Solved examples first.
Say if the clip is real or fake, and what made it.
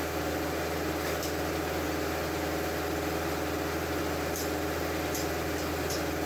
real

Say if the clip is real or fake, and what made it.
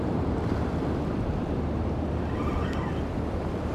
fake, vocoder, BigVGAN v2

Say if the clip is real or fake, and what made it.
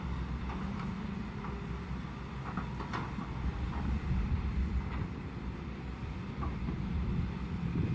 fake, vocoder, BigVGAN v2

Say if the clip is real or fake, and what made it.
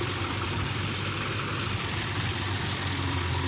fake, vocoder, BigVGAN v2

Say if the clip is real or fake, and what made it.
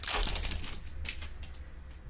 real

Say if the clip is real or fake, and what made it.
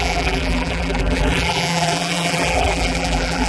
fake, vocoder, BigVGAN v2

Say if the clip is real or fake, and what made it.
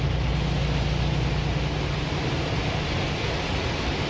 real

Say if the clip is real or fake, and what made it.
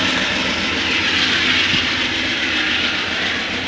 real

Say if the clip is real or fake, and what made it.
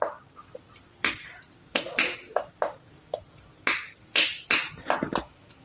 fake, vocoder, BigVGAN v2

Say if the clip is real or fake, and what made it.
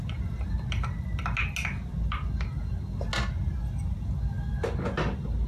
real